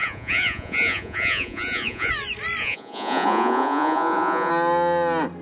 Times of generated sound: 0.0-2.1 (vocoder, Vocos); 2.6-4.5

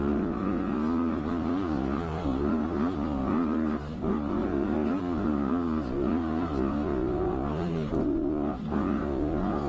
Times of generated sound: 0.0-9.7 (vocoder, Vocos)

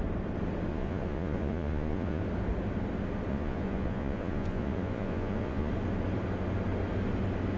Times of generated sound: 0.7-2.2 (vocoder, Vocos); 3.3-5.7

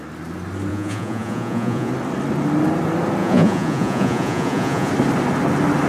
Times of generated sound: 0.7-1.9 (vocoder, Vocos); 3.2-4.9

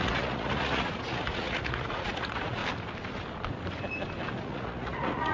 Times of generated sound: 0.0-2.6 (vocoder, Vocos); 4.4-5.3

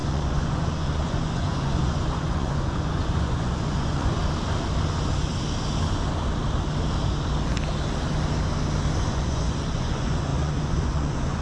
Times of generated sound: 0.0-4.2 (vocoder, Vocos); 9.1-11.4

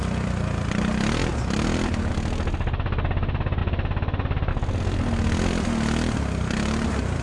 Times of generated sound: none

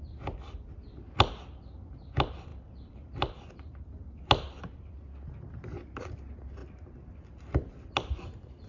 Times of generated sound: none